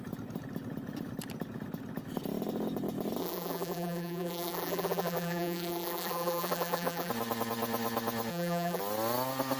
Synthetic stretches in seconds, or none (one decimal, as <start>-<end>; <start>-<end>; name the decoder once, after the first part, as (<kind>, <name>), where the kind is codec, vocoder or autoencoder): 3.2-7.1 (vocoder, BigVGAN v2); 8.3-8.8